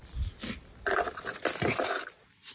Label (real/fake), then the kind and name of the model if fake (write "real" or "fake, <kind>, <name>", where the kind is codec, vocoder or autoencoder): real